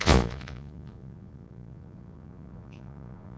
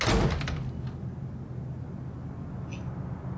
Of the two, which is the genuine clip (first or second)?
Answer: second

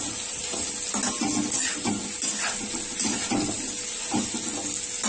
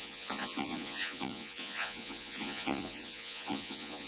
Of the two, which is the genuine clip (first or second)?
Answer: first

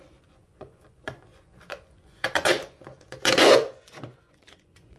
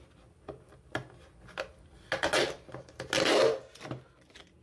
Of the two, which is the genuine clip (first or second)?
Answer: second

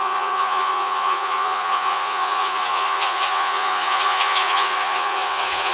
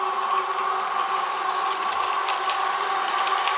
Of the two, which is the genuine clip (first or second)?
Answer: second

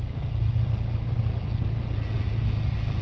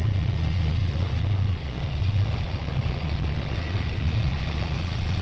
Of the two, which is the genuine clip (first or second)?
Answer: first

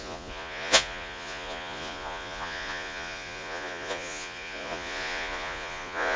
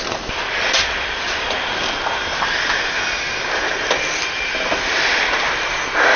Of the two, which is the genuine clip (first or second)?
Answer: second